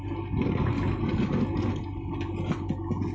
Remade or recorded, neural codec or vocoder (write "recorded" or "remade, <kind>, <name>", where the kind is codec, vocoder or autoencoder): recorded